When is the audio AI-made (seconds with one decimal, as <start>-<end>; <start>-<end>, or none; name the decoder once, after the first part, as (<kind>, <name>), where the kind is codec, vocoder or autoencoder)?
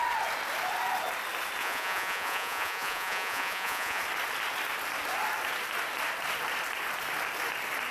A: 1.6-4.0 (vocoder, Vocos)